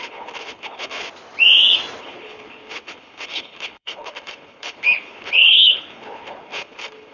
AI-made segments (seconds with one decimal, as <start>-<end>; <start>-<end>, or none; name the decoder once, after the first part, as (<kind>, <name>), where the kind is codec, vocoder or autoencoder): 0.0-1.1 (codec, HILCodec); 2.0-7.1